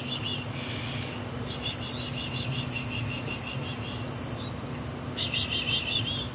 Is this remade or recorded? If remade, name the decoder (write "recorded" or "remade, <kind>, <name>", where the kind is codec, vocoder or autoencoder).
recorded